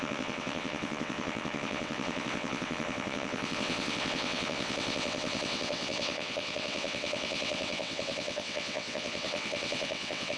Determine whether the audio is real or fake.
fake